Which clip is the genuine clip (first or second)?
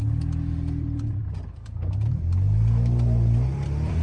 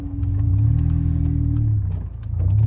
second